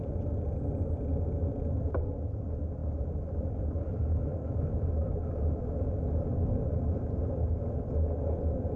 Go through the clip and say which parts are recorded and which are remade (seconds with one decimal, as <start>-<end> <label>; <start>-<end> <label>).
0.0-8.8 recorded